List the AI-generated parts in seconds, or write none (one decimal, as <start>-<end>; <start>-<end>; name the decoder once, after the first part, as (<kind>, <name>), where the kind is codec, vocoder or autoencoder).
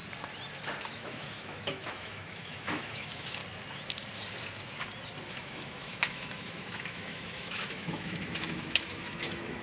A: 0.8-3.4 (autoencoder, DAC-VAE); 5.3-9.6